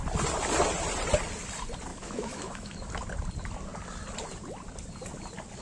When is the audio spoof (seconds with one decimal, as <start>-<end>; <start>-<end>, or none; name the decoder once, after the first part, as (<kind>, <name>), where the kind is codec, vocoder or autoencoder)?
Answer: 1.9-2.9 (autoencoder, DAC-VAE)